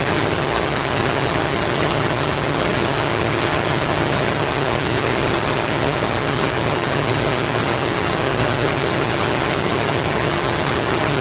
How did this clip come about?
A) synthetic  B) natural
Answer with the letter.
A